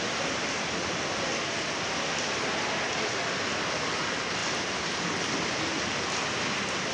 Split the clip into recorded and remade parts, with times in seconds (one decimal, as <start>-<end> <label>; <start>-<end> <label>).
0.0-6.9 recorded